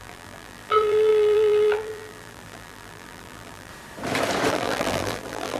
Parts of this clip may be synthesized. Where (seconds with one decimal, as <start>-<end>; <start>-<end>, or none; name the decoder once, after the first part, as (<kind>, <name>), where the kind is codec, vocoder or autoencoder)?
0.0-3.7 (vocoder, BigVGAN v2); 4.5-5.6